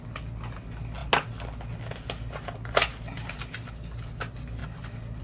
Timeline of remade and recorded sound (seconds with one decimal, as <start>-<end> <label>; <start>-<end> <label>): 0.0-5.2 recorded